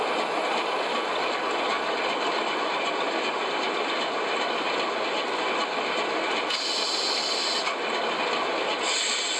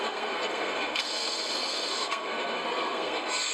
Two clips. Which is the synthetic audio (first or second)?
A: second